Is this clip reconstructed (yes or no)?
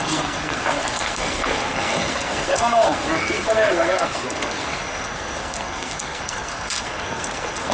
yes